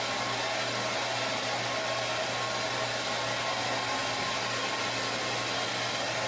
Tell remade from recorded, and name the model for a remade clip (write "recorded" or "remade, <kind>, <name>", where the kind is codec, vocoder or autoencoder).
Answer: recorded